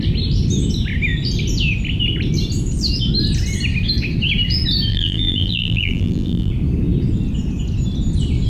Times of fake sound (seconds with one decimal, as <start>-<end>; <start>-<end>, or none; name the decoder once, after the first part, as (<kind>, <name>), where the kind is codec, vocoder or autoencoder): 4.9-6.5 (vocoder, BigVGAN v2)

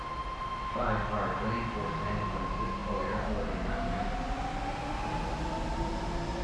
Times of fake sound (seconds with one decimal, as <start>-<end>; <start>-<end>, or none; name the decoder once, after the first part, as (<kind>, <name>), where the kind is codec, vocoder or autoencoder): none